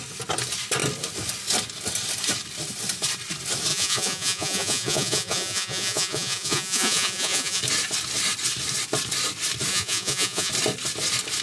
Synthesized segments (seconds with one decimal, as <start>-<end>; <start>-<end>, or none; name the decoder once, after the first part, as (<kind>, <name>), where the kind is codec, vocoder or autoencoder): 3.7-7.6 (vocoder, Vocos); 9.7-10.5